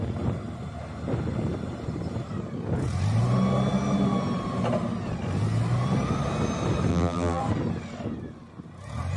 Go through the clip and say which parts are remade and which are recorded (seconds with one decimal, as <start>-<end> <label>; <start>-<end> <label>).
0.0-6.9 recorded; 6.9-7.4 remade; 7.4-9.2 recorded